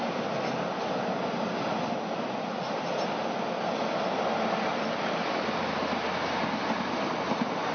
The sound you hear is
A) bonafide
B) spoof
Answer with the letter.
A